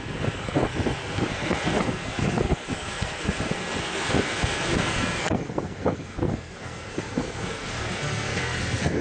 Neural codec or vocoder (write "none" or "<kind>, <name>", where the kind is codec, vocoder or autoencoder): codec, SNAC